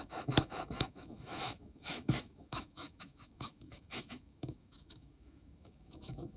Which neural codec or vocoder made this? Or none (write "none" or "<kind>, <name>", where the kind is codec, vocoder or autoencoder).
autoencoder, DAC-VAE